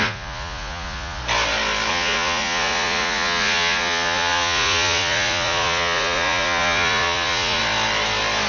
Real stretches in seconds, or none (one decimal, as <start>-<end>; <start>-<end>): 1.2-1.9; 7.6-8.5